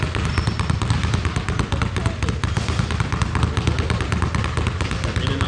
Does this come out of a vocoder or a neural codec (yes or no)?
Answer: no